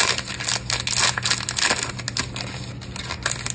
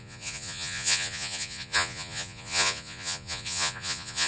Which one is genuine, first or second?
first